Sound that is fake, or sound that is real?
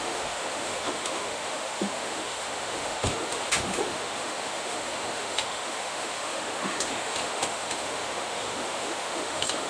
fake